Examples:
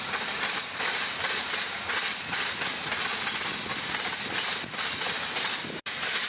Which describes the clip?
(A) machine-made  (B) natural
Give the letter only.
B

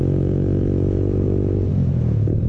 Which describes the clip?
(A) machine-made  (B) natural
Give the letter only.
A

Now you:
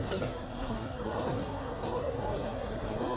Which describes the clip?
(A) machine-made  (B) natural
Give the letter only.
A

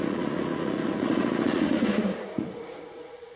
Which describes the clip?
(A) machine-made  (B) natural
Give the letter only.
A